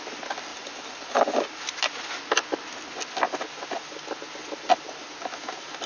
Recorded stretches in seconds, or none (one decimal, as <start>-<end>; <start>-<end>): 0.0-0.5; 1.5-5.9